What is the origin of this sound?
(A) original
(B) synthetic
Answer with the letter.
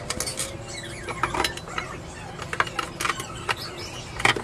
A